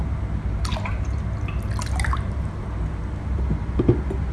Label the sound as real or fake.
real